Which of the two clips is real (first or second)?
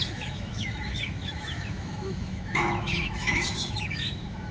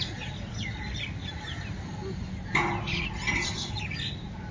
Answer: second